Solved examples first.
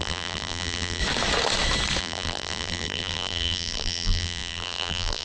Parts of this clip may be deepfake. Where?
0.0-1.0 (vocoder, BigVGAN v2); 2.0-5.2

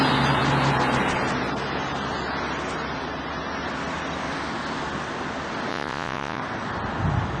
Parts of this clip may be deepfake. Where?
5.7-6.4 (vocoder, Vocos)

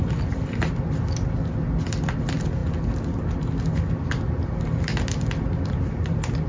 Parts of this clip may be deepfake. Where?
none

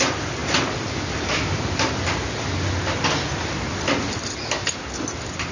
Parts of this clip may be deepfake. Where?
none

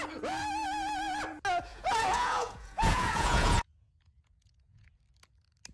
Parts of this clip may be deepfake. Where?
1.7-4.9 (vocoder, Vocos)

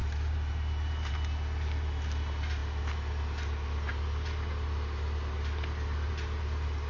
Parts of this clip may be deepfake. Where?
0.0-1.1 (vocoder, BigVGAN v2)